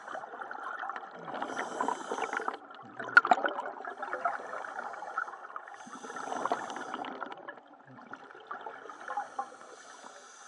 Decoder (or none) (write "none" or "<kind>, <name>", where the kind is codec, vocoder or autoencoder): none